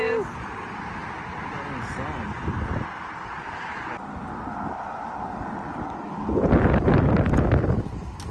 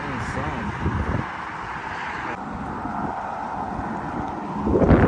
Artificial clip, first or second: second